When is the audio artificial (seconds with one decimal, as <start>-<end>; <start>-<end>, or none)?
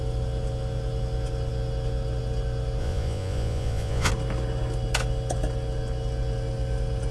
2.8-4.1